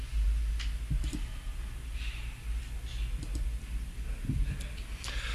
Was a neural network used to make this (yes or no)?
no